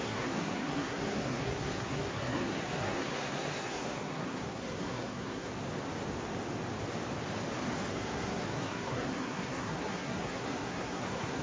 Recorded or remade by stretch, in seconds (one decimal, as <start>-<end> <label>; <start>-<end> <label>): 0.0-5.5 remade; 5.5-7.9 recorded; 7.9-11.4 remade